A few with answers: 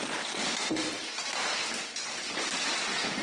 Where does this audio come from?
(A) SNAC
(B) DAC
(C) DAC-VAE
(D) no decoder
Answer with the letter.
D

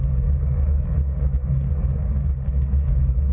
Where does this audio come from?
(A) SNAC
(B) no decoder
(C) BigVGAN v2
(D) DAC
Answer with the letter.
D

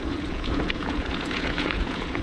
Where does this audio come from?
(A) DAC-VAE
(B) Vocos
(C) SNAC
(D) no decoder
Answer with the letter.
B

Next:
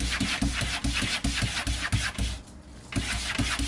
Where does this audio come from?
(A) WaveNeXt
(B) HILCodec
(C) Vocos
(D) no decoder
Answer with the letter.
D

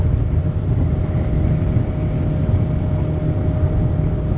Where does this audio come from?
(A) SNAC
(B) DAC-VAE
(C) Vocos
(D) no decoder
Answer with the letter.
D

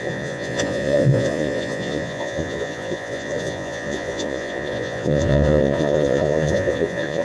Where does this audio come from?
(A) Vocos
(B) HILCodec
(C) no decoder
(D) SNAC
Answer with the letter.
A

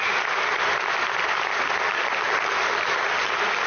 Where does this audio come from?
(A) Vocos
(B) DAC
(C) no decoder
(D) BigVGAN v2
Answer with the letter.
C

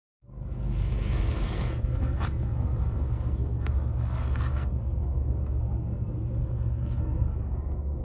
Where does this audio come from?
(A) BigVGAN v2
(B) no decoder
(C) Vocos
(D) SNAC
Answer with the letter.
D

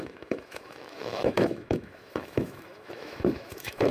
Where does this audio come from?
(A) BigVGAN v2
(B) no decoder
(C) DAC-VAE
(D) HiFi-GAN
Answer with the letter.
C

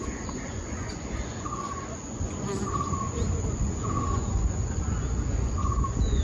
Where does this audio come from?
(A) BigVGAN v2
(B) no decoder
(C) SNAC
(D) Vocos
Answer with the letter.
D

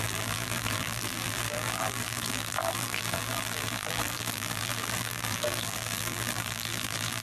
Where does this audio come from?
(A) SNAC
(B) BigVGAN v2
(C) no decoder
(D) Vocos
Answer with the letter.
B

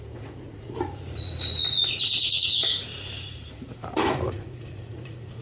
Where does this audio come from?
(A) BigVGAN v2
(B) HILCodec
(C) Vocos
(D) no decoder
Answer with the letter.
C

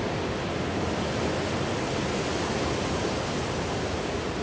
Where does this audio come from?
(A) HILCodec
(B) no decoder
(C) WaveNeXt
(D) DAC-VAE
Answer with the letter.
B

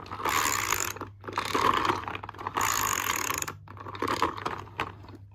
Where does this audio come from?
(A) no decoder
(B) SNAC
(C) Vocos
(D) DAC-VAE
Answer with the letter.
A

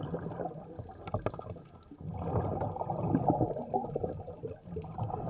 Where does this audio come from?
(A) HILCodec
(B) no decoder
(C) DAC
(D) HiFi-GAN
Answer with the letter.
B